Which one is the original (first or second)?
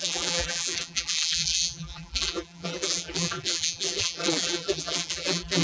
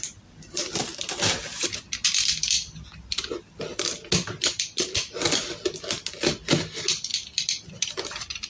second